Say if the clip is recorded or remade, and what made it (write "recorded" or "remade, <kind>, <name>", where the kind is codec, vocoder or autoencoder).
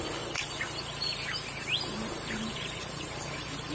remade, vocoder, BigVGAN v2